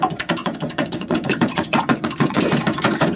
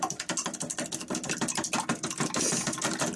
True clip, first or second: second